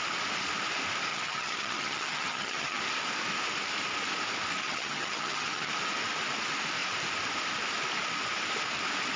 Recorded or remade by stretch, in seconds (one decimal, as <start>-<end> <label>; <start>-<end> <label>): 0.0-1.1 recorded; 1.1-2.8 remade; 2.8-4.6 recorded; 4.6-5.7 remade; 5.7-9.2 recorded